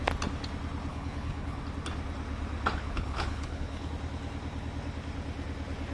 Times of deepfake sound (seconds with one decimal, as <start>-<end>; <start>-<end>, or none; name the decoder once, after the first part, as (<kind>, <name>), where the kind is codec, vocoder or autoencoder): 0.9-1.6 (codec, HILCodec); 2.8-3.9